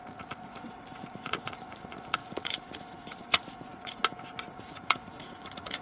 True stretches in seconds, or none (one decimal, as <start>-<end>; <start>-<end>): 4.0-4.5